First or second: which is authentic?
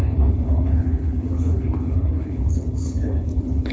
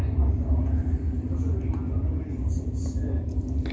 second